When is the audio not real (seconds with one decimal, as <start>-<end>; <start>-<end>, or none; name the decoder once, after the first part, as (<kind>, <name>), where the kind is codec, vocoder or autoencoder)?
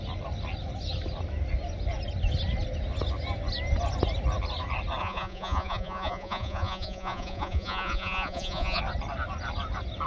5.0-8.8 (vocoder, Vocos)